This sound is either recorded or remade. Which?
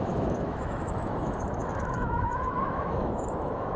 remade